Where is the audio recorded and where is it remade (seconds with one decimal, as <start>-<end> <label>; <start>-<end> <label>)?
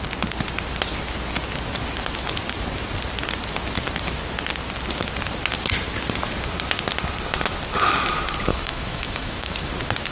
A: 0.0-8.5 recorded; 8.5-9.7 remade; 9.7-10.1 recorded